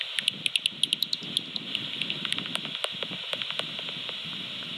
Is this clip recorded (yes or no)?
yes